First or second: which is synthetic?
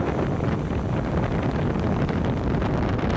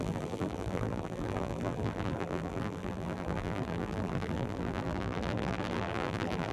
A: second